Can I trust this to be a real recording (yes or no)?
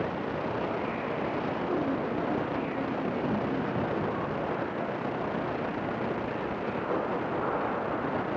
yes